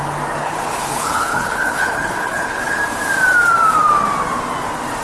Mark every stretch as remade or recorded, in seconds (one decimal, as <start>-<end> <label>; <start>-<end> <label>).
0.0-0.4 recorded; 0.4-2.8 remade; 2.8-5.0 recorded